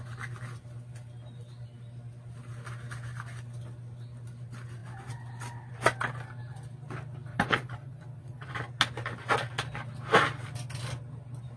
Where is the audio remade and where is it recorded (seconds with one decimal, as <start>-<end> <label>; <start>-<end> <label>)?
0.0-7.3 recorded; 7.3-8.5 remade; 8.5-11.6 recorded